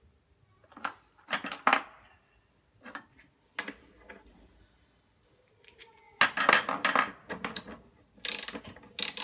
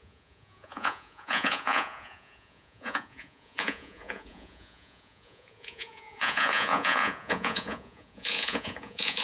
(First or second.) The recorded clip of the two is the first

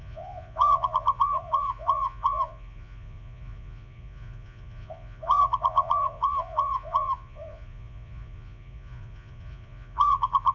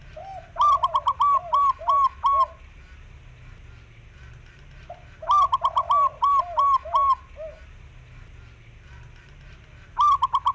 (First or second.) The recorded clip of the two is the second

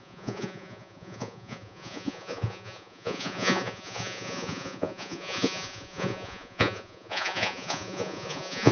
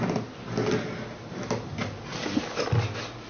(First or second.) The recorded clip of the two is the second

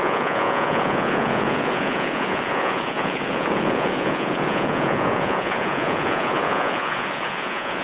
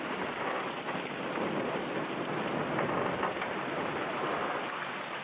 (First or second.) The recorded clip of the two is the second